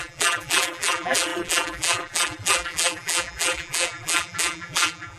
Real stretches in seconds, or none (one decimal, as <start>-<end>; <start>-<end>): none